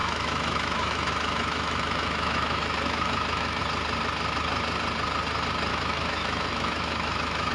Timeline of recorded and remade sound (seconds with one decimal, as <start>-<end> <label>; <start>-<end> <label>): 0.0-3.6 remade; 3.6-5.7 recorded; 5.7-7.5 remade